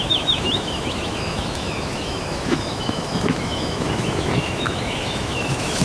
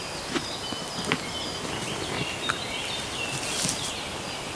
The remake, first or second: first